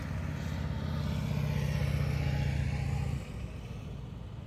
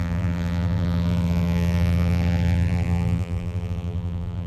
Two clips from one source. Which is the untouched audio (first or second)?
first